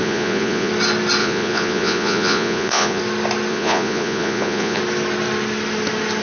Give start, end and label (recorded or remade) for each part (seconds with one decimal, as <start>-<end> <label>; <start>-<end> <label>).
0.0-0.7 remade; 0.7-1.2 recorded; 1.2-3.0 remade; 3.0-3.5 recorded; 3.5-4.8 remade; 4.8-6.2 recorded

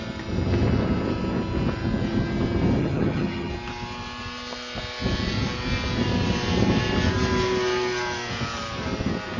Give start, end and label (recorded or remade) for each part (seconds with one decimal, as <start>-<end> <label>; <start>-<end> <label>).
0.0-2.8 recorded; 2.8-3.5 remade; 3.5-9.4 recorded

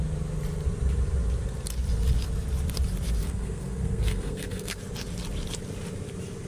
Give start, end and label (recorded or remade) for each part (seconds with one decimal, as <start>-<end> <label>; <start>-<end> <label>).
0.0-3.2 recorded; 3.2-4.8 remade; 4.8-6.5 recorded

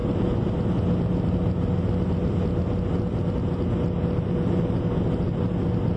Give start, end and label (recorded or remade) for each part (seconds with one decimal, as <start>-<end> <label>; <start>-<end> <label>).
0.0-6.0 recorded

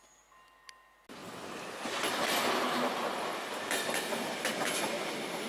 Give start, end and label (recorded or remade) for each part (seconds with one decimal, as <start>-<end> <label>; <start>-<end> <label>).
0.0-5.5 recorded

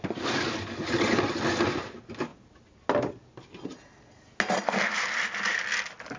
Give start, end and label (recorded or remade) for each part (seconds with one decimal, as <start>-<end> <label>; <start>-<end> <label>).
0.0-6.2 recorded

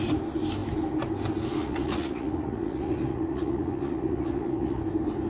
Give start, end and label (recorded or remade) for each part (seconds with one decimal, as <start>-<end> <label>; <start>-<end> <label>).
0.0-1.6 recorded; 1.6-4.8 remade; 4.8-5.3 recorded